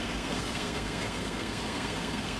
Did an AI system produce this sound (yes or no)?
yes